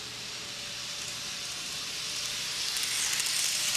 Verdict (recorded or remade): recorded